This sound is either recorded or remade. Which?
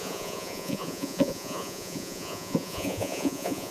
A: remade